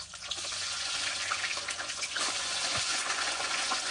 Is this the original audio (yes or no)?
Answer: no